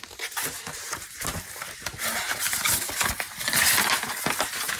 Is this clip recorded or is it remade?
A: recorded